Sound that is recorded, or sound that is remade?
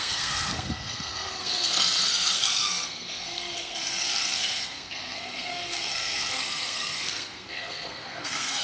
remade